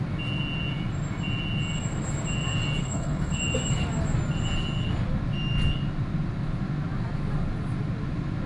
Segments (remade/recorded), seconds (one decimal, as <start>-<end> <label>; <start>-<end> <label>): 0.0-2.8 recorded; 2.8-3.4 remade; 3.4-8.5 recorded